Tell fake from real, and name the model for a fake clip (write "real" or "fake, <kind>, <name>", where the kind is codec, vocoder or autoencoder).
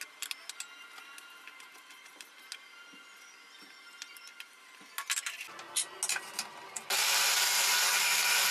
real